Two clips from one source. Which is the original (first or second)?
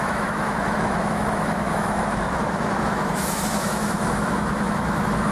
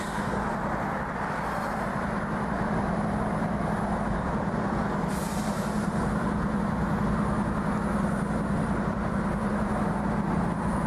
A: second